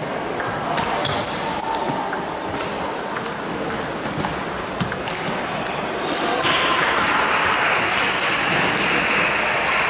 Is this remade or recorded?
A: recorded